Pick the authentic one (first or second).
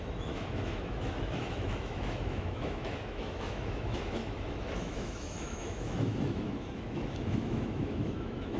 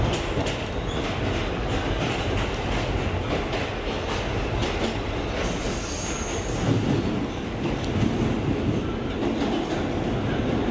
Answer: second